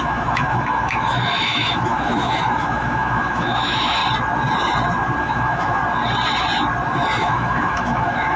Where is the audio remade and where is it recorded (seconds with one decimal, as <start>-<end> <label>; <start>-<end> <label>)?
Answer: 0.0-4.0 remade; 4.0-5.2 recorded; 5.2-5.8 remade; 5.8-7.2 recorded; 7.2-8.4 remade